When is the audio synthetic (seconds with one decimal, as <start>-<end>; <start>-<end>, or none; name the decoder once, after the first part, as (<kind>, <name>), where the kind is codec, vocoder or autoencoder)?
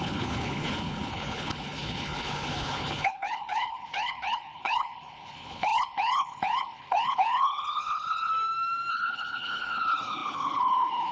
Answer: 0.0-8.3 (codec, HILCodec); 8.9-11.1